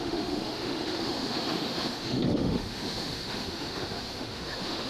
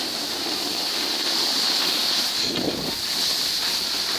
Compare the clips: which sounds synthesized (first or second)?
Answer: first